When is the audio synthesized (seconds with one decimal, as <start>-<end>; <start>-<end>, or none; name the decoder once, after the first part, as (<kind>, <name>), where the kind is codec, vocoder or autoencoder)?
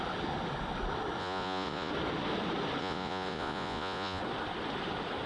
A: 1.2-1.9 (vocoder, Vocos); 2.8-4.2